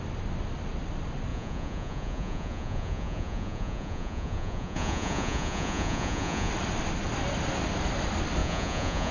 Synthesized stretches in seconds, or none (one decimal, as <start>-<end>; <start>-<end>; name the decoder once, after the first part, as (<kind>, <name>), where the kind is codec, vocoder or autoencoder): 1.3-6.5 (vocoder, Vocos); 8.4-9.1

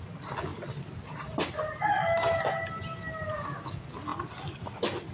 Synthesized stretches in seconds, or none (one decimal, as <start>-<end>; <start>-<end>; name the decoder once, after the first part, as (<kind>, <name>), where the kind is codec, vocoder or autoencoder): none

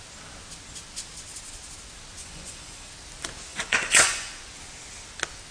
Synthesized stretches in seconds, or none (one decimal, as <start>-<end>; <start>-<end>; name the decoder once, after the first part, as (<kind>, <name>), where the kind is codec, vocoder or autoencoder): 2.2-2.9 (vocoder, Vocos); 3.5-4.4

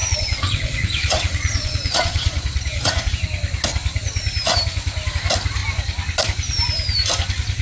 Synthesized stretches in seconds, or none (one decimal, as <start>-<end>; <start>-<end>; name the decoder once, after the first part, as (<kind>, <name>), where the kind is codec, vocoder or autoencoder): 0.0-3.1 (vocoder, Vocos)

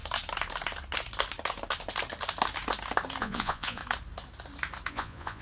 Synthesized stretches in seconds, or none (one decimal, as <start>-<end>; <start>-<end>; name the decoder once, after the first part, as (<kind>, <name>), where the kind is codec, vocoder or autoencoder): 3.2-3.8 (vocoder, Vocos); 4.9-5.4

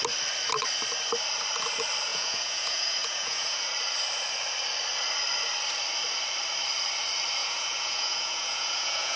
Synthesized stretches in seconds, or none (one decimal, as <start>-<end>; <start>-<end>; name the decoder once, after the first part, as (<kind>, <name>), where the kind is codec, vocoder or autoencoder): 2.1-3.7 (vocoder, Vocos); 7.4-9.2